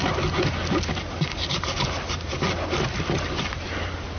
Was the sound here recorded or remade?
recorded